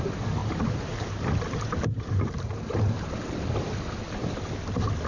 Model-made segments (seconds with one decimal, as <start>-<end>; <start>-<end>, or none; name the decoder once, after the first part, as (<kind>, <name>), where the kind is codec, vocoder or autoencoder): 0.4-3.5 (vocoder, BigVGAN v2)